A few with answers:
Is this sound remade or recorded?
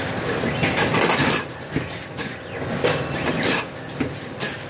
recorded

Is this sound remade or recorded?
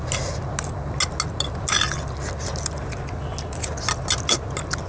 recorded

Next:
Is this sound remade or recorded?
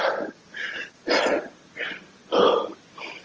recorded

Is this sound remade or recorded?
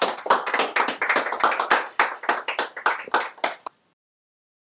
recorded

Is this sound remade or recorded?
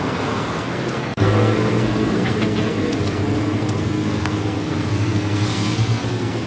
remade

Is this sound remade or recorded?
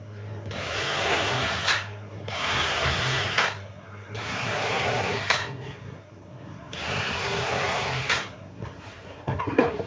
remade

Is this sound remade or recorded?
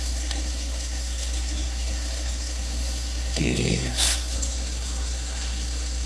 remade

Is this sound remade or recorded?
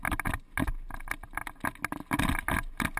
recorded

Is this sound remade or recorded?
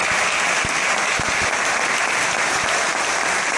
recorded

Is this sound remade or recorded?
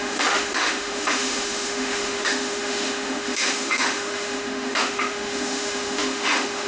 remade